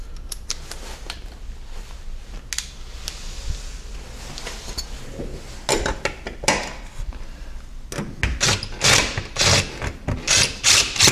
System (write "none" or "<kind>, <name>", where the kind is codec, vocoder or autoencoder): none